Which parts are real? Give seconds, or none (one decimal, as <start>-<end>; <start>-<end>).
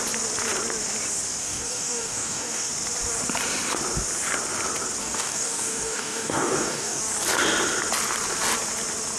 0.0-1.4; 2.7-5.0; 7.0-9.2